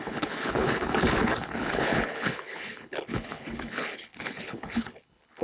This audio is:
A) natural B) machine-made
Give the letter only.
B